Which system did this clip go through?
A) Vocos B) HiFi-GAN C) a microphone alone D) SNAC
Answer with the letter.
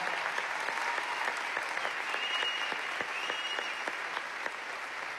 C